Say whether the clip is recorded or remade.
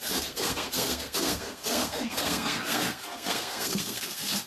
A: remade